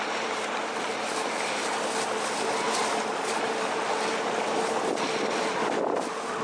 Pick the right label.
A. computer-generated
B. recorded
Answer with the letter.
B